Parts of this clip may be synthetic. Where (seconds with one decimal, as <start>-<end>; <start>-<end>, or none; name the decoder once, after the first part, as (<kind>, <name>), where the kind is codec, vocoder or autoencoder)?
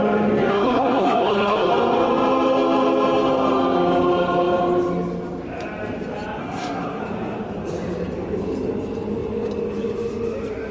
0.5-1.7 (codec, SNAC); 6.4-7.0